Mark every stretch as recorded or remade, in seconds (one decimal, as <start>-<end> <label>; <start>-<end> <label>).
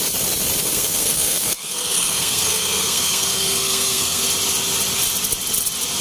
0.0-0.6 recorded; 0.6-4.2 remade; 4.2-6.0 recorded